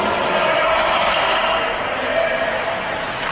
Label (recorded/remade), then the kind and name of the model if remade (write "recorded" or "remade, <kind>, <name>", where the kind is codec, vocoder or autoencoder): recorded